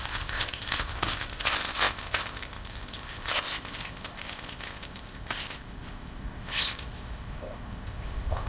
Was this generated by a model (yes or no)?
yes